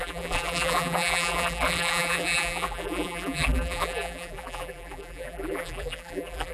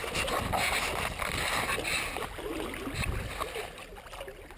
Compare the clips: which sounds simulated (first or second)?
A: first